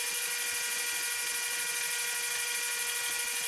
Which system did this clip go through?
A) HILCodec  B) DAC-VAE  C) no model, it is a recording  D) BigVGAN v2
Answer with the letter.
C